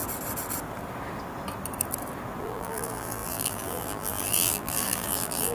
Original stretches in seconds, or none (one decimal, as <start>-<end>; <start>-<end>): 0.0-2.4